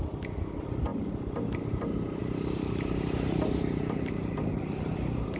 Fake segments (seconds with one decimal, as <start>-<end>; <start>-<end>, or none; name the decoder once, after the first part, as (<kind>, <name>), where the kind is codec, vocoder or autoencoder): 0.9-1.6 (vocoder, BigVGAN v2); 2.2-5.4